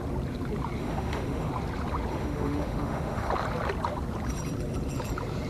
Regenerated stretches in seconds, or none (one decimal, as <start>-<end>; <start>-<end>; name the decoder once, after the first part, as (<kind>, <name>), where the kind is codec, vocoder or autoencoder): 0.8-1.5 (autoencoder, DAC-VAE); 2.1-3.3